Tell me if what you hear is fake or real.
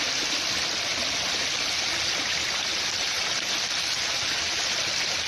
real